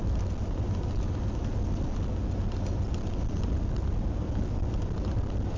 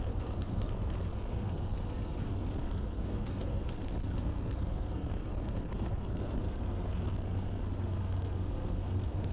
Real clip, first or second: first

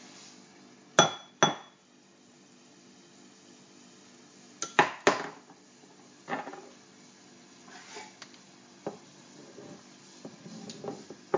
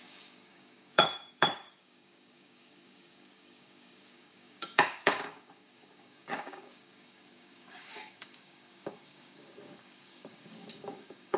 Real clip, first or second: first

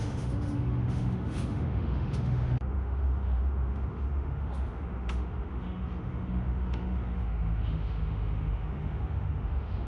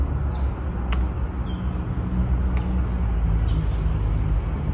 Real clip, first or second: second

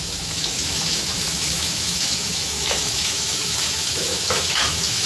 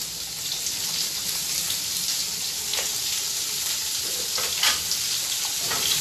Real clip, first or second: second